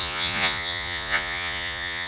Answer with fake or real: fake